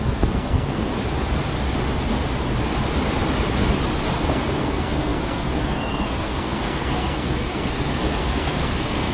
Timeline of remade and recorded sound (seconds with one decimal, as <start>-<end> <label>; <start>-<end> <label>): 0.0-0.9 remade; 0.9-4.2 recorded; 4.2-9.1 remade